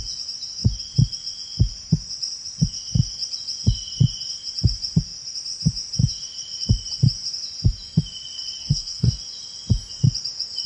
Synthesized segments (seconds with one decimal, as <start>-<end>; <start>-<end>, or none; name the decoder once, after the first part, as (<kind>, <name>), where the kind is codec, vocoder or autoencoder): 8.6-9.2 (codec, SNAC)